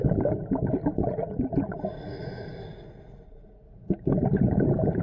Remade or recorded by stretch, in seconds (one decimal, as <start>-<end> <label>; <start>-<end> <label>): 0.0-5.0 recorded